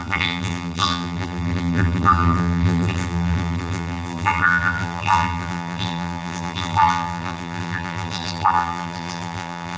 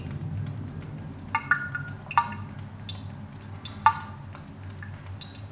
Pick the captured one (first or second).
second